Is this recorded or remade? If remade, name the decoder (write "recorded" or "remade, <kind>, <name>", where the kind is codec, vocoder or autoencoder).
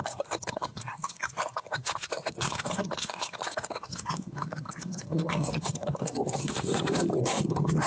remade, codec, SNAC